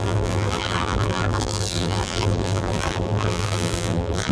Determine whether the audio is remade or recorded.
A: remade